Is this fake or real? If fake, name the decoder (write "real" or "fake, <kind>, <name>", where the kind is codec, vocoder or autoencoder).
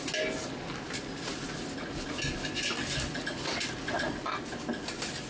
real